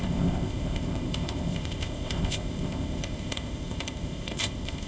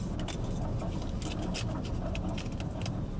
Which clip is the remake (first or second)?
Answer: first